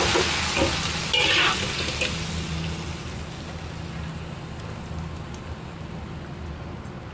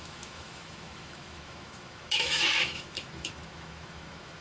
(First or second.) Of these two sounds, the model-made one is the second